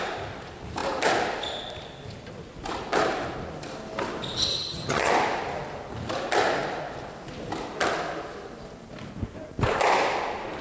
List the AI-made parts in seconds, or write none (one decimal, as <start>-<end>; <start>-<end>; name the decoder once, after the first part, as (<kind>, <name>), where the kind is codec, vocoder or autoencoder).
4.5-5.1 (vocoder, HiFi-GAN)

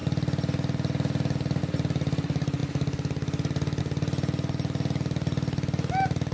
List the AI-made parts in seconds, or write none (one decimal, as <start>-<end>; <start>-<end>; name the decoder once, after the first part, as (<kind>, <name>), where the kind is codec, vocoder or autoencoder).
none

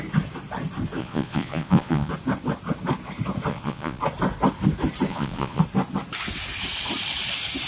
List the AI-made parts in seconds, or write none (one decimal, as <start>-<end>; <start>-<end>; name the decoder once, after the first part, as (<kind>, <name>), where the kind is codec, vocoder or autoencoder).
1.0-2.1 (vocoder, Vocos); 3.5-4.0; 5.1-5.6

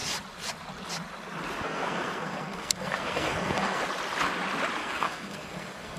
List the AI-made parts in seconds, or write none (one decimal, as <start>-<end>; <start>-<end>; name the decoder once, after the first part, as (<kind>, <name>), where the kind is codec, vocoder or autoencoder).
1.6-3.8 (codec, SNAC); 4.8-6.0

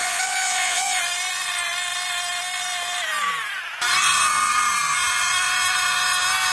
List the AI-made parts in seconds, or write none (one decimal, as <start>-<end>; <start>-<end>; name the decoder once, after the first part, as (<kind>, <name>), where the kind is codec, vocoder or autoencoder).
0.0-1.0 (vocoder, Vocos)

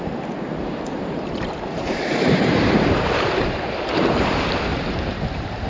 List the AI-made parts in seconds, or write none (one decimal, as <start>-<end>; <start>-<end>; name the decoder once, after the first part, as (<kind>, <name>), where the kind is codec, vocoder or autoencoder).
0.0-5.7 (vocoder, BigVGAN v2)

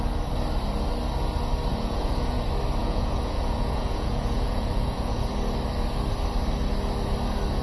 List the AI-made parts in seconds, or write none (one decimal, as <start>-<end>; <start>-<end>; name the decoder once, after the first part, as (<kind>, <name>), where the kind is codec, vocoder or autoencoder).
1.7-2.4 (vocoder, Vocos); 2.8-5.3

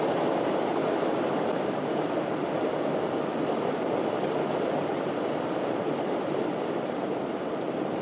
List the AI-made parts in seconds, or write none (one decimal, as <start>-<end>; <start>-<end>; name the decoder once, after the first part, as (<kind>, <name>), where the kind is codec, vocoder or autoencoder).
none